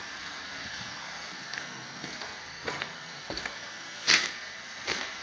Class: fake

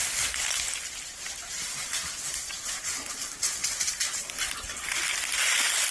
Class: real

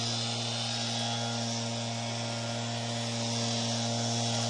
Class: real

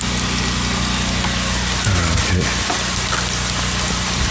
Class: real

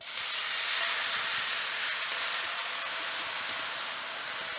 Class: real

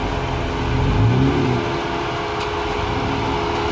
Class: real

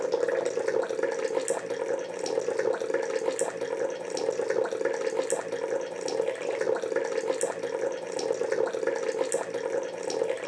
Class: real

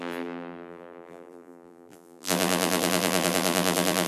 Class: fake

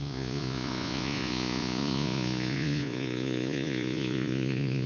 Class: fake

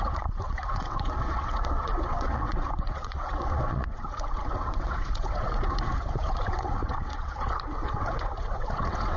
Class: fake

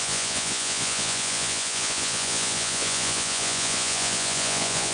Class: fake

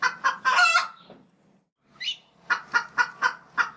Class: real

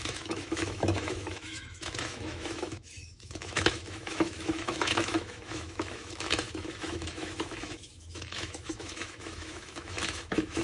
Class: fake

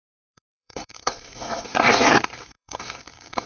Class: fake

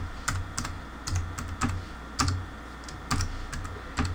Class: real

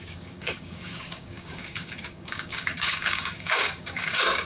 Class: fake